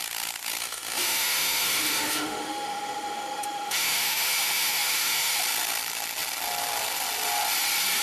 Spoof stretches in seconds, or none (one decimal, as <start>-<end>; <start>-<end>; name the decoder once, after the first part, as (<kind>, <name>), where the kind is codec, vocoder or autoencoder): 0.6-5.4 (autoencoder, DAC-VAE)